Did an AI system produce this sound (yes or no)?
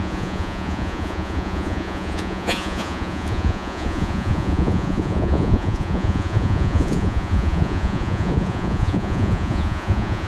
yes